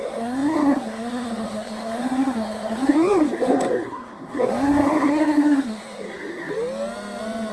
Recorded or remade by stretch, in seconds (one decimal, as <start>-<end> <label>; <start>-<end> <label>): 0.0-6.5 remade; 6.5-7.5 recorded